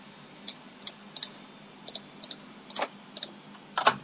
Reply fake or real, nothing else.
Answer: real